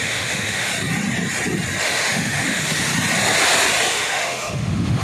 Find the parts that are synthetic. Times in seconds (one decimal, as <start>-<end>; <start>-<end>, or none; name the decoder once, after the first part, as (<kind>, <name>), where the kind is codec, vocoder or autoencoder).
0.0-0.7 (autoencoder, DAC-VAE); 1.8-2.9; 3.9-5.0